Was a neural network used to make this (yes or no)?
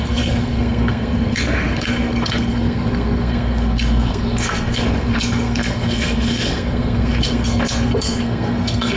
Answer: yes